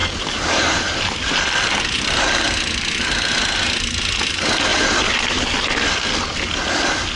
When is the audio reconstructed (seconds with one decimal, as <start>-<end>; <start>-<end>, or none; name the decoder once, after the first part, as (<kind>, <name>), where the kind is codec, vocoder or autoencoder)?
0.0-1.4 (vocoder, BigVGAN v2); 4.7-5.4

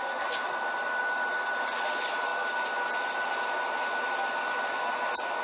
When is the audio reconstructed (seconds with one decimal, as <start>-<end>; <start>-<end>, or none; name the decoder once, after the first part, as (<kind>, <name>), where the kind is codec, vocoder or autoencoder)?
2.3-3.3 (vocoder, BigVGAN v2)

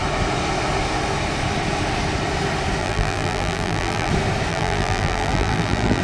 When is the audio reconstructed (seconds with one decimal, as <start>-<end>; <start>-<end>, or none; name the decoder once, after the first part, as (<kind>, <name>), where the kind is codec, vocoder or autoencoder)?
2.8-4.1 (vocoder, BigVGAN v2); 4.5-6.0

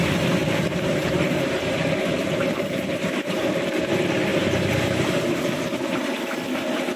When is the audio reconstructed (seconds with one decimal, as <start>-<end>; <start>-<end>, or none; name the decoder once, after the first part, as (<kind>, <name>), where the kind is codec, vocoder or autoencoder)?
0.4-3.9 (vocoder, BigVGAN v2); 4.3-5.6